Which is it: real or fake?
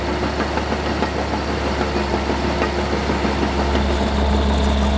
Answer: real